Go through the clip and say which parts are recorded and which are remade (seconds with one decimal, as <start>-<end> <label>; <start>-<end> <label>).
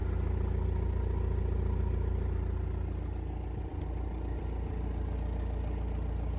0.0-6.4 recorded